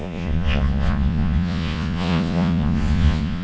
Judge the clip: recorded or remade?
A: remade